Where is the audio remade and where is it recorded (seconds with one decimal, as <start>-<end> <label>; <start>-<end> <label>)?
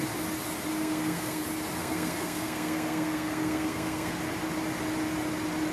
0.0-0.7 recorded; 0.7-1.4 remade; 1.4-1.8 recorded; 1.8-4.2 remade; 4.2-5.7 recorded